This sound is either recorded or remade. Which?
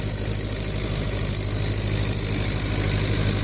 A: recorded